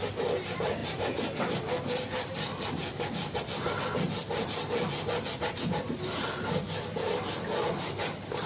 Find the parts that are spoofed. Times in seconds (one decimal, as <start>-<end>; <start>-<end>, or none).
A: 0.0-8.5